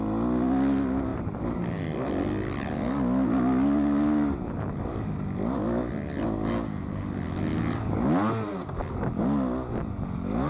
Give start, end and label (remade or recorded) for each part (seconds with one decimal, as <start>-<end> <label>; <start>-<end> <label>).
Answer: 0.0-10.5 recorded